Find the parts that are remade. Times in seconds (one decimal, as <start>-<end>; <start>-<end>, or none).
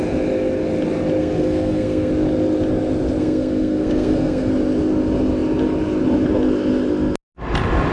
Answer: 1.2-2.1; 3.2-4.5